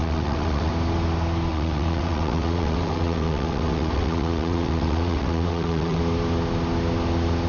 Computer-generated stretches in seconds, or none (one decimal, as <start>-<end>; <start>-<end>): 0.0-0.7; 1.5-6.0